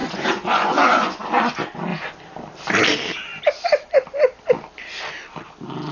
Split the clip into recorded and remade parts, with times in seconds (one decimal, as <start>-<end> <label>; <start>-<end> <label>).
0.0-1.2 remade; 1.2-5.9 recorded